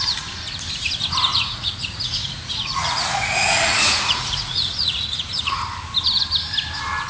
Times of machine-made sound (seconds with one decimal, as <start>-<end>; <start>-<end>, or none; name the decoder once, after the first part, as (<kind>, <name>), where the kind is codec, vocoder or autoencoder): 1.3-5.6 (vocoder, Vocos)